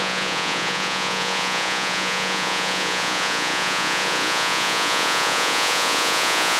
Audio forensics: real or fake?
fake